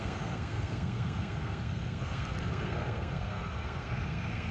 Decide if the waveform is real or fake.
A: fake